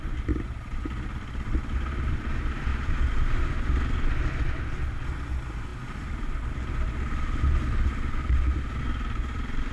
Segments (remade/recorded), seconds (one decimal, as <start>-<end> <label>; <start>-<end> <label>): 0.0-9.7 recorded